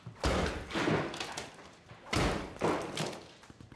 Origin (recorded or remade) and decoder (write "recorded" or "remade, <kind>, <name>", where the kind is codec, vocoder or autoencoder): recorded